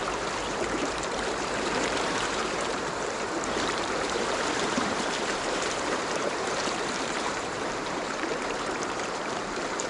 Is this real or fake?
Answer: fake